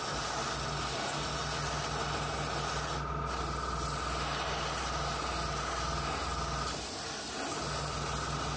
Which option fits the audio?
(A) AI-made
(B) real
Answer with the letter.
B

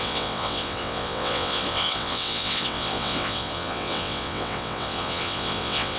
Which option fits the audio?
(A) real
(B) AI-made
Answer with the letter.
B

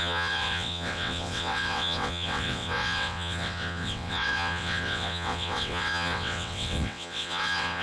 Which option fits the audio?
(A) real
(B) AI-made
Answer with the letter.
B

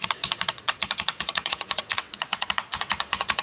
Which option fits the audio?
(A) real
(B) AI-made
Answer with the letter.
B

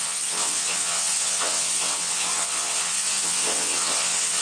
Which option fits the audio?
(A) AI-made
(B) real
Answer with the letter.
A